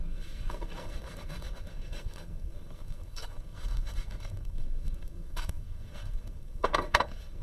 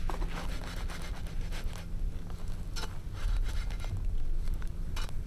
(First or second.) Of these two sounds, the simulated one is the first